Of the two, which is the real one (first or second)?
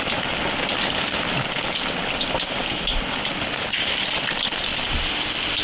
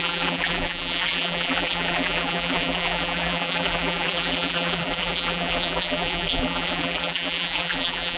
first